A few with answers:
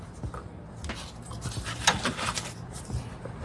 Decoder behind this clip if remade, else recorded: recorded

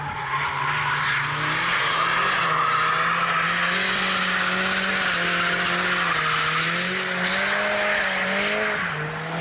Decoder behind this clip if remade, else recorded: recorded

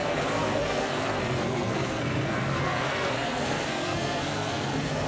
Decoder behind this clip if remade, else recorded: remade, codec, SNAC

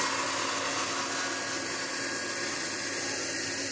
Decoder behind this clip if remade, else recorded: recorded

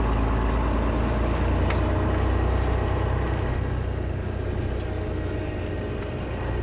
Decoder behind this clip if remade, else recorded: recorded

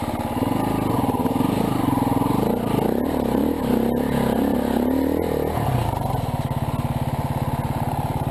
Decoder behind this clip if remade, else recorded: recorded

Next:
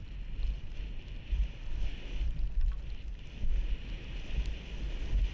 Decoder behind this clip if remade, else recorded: recorded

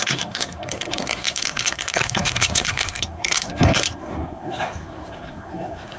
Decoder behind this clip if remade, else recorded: remade, codec, SNAC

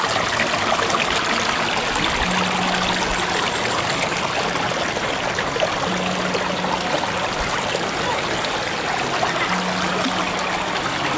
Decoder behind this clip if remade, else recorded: recorded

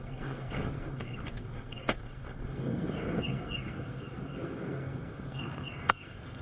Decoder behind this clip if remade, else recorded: remade, codec, SNAC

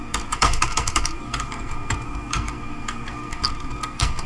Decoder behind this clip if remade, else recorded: remade, codec, SNAC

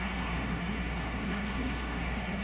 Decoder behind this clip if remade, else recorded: remade, codec, SNAC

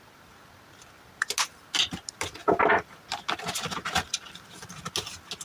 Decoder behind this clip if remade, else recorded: recorded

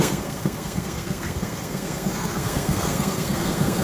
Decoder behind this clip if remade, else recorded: remade, codec, SNAC